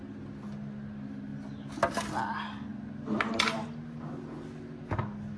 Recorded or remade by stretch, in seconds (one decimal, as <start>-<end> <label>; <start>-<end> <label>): 0.0-5.4 recorded